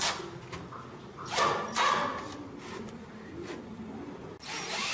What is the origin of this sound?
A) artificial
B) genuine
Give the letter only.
B